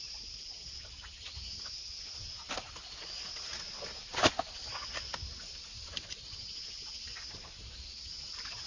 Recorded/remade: recorded